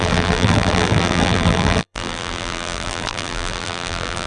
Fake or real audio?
fake